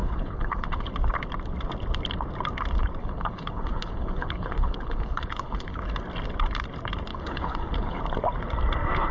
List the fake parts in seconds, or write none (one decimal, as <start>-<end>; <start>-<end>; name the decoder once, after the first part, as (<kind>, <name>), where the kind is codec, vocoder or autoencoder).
0.0-0.9 (codec, HILCodec); 3.0-5.8; 7.1-8.0